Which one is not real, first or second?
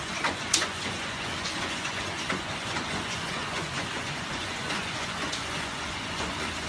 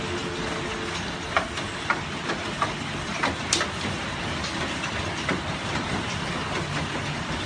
first